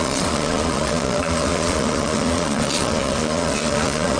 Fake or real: fake